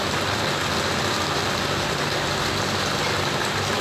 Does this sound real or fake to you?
real